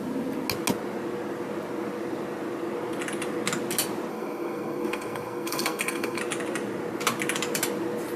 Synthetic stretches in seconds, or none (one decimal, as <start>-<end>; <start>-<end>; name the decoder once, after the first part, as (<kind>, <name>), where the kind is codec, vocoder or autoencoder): 4.1-6.2 (codec, SNAC)